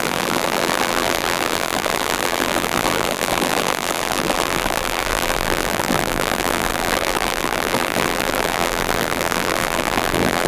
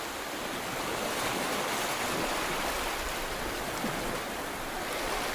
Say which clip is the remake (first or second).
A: first